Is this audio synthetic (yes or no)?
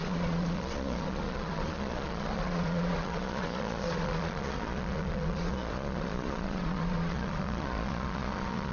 yes